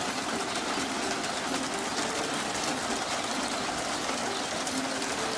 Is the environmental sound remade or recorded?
recorded